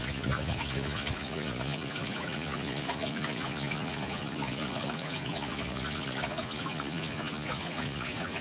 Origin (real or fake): fake